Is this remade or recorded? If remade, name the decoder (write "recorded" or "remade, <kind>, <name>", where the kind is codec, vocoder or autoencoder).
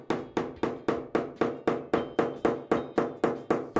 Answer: recorded